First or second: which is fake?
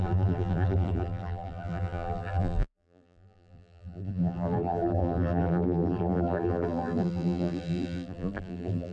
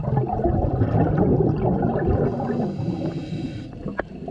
first